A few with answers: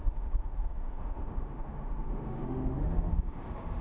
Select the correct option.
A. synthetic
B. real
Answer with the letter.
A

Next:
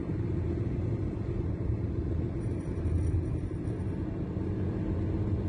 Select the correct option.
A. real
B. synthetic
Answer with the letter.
A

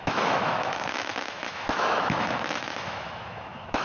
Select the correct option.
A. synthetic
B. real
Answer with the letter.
A